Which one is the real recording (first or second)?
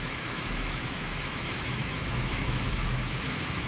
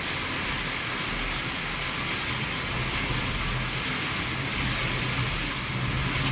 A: second